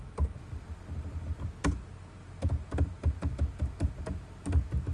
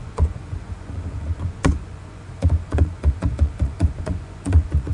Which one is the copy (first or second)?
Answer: second